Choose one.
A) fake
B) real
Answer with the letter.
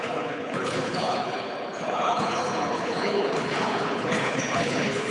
A